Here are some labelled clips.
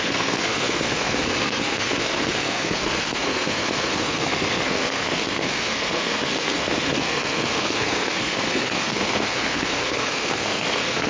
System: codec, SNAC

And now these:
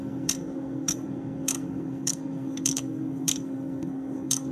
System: codec, SNAC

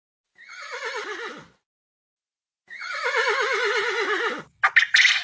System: none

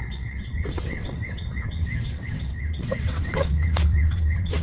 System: vocoder, WaveNeXt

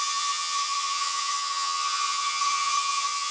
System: vocoder, HiFi-GAN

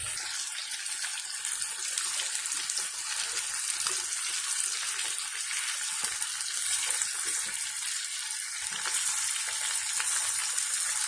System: none